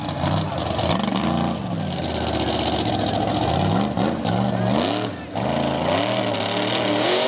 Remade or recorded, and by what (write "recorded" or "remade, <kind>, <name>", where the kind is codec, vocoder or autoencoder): recorded